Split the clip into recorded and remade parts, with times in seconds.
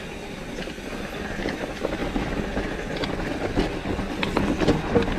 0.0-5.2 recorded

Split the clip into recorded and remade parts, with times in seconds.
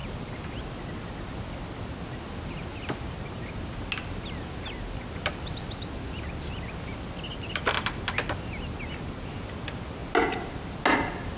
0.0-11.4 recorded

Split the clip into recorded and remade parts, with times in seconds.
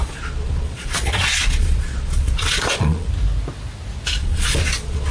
0.0-3.1 remade; 3.1-4.2 recorded; 4.2-5.1 remade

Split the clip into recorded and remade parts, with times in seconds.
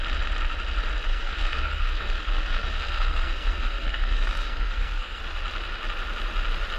0.0-1.1 recorded; 1.1-5.2 remade; 5.2-6.8 recorded